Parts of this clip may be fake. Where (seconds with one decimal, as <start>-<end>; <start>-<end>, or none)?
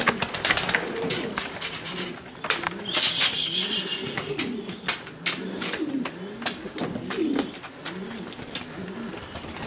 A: 3.9-4.8